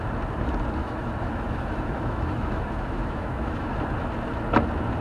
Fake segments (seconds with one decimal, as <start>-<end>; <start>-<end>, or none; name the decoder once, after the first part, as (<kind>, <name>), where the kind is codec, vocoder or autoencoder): 0.8-3.8 (autoencoder, DAC-VAE)